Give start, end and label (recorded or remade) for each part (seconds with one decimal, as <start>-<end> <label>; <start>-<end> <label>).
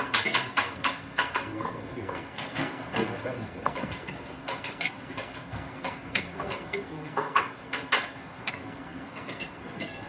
0.0-10.1 remade